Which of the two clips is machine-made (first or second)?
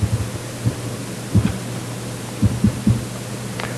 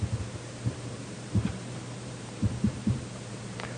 second